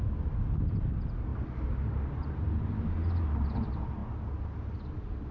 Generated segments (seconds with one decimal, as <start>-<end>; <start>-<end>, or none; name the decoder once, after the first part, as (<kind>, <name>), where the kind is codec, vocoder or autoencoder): none